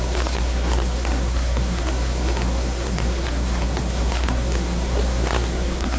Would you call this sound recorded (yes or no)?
no